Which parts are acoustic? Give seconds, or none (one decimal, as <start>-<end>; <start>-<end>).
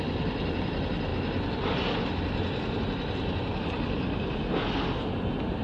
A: 0.0-5.6